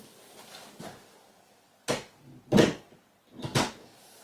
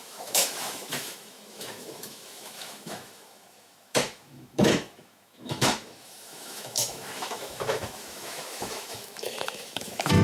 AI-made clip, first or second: second